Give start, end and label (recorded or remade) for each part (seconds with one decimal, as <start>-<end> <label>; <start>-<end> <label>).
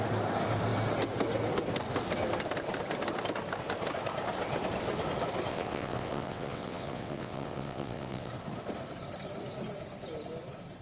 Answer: 0.0-5.5 recorded; 5.5-8.3 remade; 8.3-10.8 recorded